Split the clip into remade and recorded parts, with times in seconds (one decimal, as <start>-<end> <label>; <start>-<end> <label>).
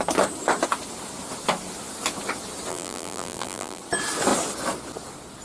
0.0-2.7 recorded; 2.7-3.8 remade; 3.8-5.4 recorded